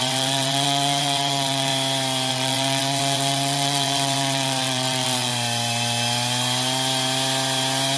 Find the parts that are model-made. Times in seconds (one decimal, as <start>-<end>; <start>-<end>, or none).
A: 0.0-1.7; 2.3-5.3